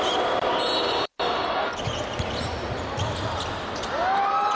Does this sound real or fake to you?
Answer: real